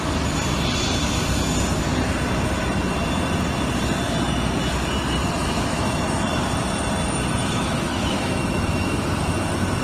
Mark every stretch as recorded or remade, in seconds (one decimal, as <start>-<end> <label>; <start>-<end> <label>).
0.0-5.2 recorded; 5.2-6.4 remade; 6.4-7.4 recorded; 7.4-9.1 remade; 9.1-9.8 recorded